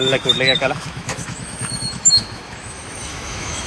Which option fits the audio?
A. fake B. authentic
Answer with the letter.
A